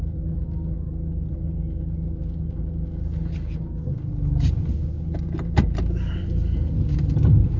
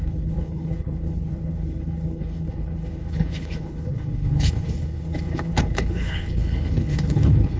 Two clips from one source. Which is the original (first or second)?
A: first